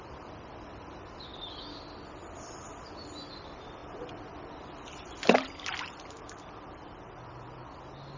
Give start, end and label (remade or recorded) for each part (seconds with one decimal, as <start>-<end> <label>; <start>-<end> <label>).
0.0-8.2 recorded